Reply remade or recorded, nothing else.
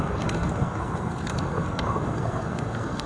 remade